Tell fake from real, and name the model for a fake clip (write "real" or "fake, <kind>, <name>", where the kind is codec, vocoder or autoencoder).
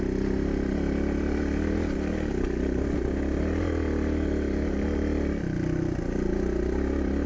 real